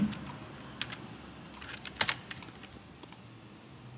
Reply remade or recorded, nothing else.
recorded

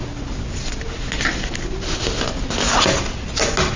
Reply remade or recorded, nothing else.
recorded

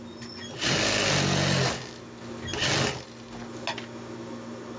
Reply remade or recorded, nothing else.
recorded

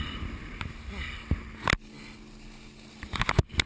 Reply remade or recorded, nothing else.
recorded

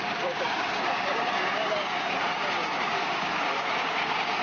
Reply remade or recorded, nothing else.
remade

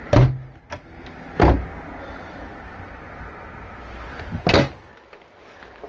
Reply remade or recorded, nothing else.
recorded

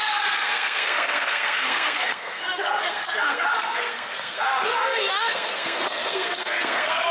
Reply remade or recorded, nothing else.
remade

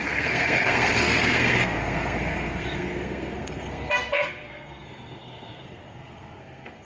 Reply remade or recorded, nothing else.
remade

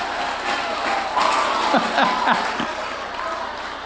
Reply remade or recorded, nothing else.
recorded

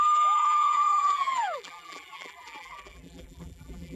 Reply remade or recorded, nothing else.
remade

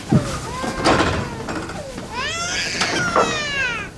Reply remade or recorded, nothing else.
recorded